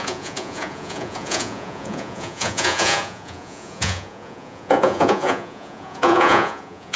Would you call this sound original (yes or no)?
no